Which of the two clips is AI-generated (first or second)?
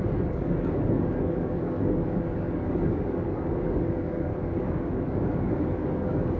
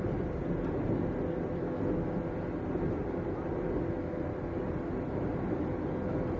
first